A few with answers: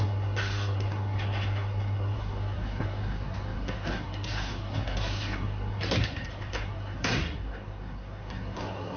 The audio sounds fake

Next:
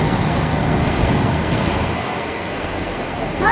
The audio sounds fake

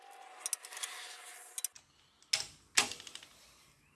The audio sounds real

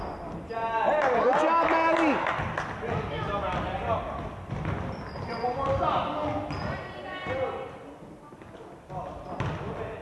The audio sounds real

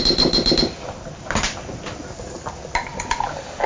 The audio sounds real